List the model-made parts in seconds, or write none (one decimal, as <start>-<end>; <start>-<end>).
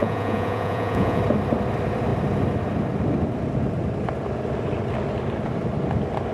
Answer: 0.0-1.2